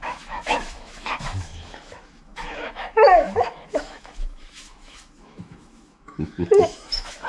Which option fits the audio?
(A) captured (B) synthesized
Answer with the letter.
B